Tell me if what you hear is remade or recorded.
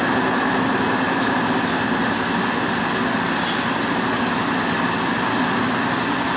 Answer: recorded